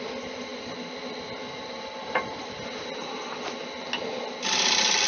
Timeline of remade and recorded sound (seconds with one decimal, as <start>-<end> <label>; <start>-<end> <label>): 0.0-5.1 recorded

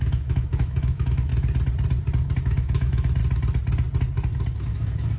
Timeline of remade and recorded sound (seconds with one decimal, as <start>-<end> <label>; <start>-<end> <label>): 0.0-1.3 remade; 1.3-2.4 recorded; 2.4-3.2 remade; 3.2-4.6 recorded; 4.6-5.2 remade